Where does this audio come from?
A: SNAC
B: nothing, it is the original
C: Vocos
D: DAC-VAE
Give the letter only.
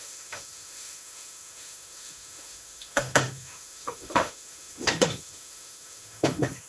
D